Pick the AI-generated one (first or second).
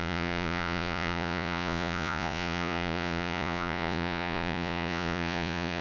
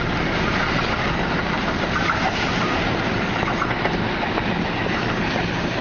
first